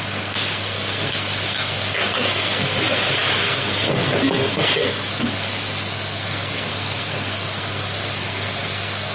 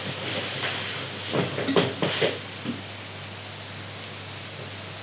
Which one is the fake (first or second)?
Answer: first